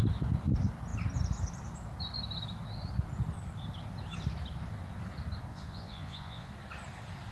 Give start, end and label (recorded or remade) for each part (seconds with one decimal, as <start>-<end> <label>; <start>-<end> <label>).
0.0-5.5 recorded; 5.5-6.5 remade; 6.5-7.3 recorded